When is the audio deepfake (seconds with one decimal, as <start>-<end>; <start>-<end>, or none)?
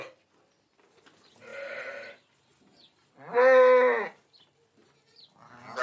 none